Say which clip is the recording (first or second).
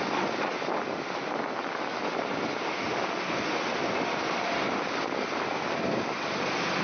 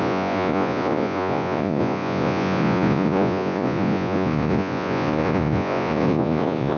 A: first